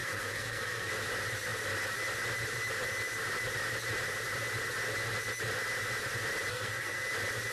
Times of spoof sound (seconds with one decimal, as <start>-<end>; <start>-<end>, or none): 0.0-0.9; 6.5-7.1